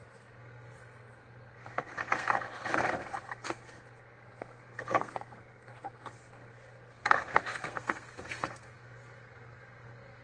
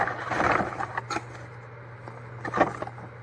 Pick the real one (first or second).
second